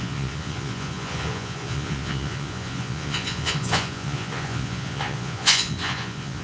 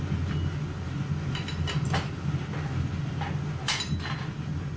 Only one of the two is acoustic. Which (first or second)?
second